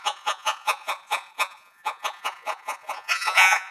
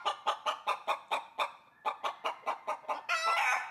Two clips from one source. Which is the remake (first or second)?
first